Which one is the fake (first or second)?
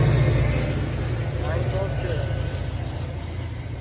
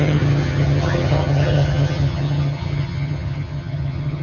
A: second